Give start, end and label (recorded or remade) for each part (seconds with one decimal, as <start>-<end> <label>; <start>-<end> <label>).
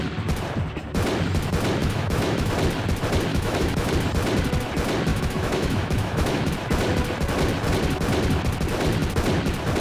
0.0-1.8 recorded; 1.8-2.5 remade; 2.5-3.3 recorded; 3.3-3.9 remade; 3.9-5.1 recorded; 5.1-6.5 remade; 6.5-9.8 recorded